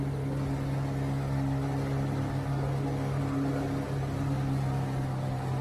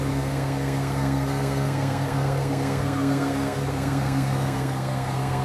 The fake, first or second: second